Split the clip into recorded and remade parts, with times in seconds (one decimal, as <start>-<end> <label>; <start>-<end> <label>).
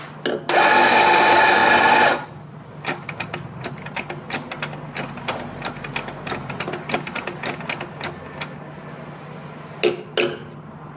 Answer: 0.0-11.0 recorded